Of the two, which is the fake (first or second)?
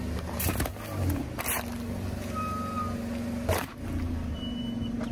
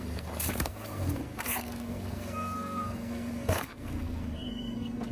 second